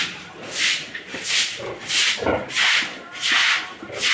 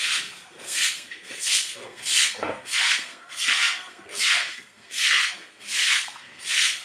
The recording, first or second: first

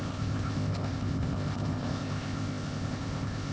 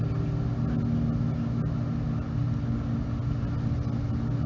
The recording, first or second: second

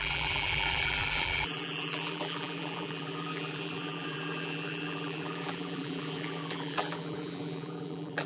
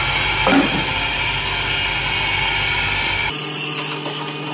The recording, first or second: second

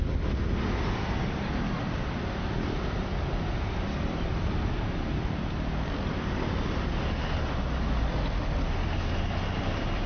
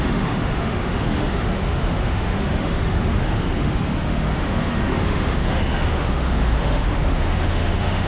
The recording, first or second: first